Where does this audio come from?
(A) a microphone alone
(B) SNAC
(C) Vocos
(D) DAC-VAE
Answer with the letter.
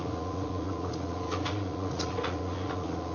C